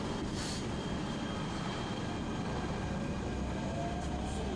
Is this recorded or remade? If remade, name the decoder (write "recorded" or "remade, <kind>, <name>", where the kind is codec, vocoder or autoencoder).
remade, vocoder, BigVGAN v2